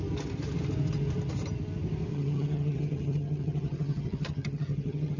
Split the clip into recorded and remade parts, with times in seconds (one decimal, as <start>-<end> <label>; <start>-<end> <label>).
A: 0.0-2.1 recorded; 2.1-5.2 remade